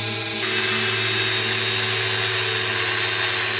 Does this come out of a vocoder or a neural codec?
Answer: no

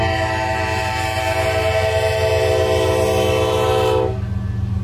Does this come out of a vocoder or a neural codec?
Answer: no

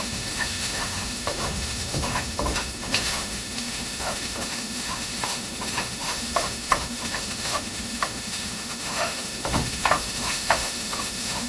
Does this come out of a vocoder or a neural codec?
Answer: yes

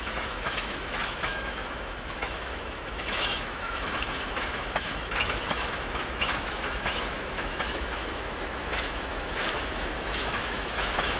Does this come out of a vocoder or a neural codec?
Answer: yes